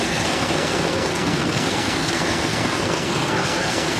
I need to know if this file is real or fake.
fake